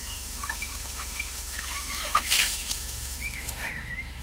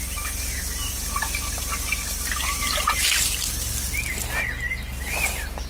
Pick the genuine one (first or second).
second